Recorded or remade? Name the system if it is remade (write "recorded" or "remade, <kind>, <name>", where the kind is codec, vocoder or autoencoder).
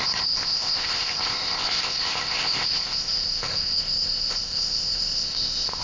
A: remade, codec, ZipCodec